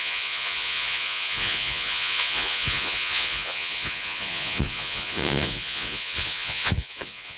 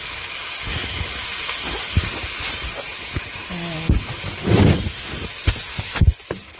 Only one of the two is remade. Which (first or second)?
first